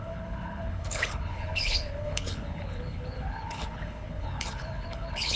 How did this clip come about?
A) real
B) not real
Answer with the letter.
B